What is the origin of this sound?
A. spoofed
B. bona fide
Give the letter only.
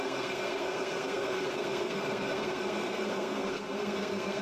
A